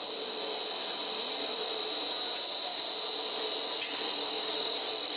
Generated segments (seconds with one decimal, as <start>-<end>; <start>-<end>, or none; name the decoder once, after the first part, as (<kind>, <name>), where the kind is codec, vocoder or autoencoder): none